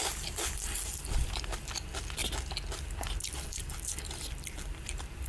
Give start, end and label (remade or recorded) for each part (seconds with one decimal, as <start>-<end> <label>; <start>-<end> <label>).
0.0-2.2 remade; 2.2-3.5 recorded; 3.5-5.3 remade